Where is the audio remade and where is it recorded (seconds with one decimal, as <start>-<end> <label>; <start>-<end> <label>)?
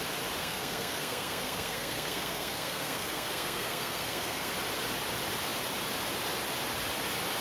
0.0-0.4 recorded; 0.4-4.5 remade; 4.5-7.4 recorded